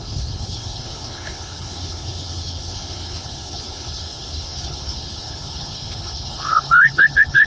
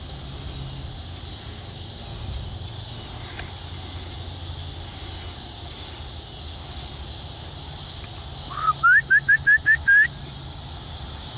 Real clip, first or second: second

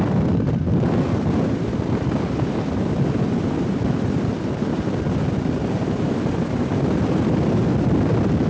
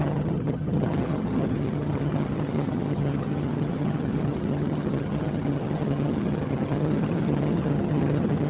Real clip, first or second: first